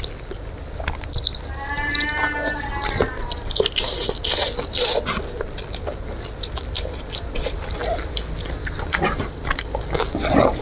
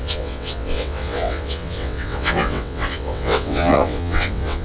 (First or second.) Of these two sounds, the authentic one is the first